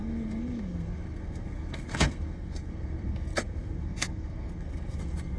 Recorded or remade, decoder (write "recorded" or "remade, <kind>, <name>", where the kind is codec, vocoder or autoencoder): remade, codec, SNAC